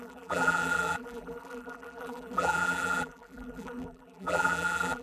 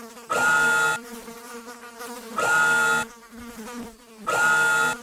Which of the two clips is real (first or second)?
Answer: second